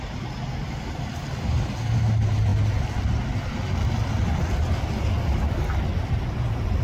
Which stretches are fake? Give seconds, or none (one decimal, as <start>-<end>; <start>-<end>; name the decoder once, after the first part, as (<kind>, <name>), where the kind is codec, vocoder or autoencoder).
none